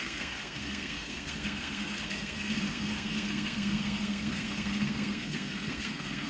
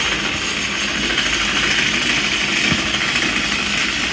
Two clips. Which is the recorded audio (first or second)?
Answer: second